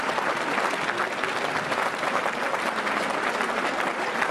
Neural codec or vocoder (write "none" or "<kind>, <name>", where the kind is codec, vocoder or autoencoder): none